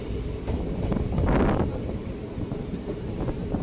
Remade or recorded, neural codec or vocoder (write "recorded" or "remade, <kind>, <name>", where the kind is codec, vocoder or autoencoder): recorded